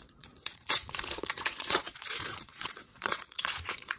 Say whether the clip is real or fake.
fake